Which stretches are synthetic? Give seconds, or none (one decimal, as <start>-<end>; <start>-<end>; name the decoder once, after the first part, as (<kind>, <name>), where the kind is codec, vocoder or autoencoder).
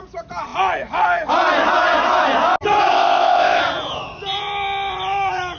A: 2.9-3.6 (codec, ZipCodec)